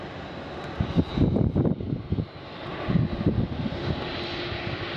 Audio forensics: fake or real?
real